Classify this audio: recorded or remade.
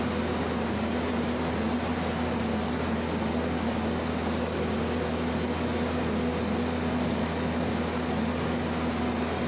recorded